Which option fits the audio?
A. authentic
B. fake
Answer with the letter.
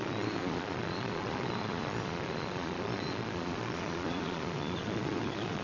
B